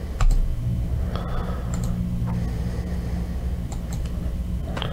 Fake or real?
real